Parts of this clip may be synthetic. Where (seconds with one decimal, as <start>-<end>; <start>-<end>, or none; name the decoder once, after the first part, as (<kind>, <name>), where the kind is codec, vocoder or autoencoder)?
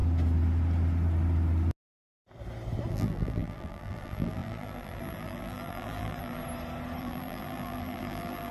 2.9-6.4 (vocoder, BigVGAN v2); 7.0-8.5